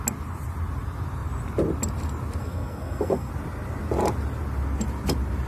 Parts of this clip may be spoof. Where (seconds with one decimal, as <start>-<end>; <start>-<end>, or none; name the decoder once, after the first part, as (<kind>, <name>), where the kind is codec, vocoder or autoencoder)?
2.4-3.3 (codec, SNAC)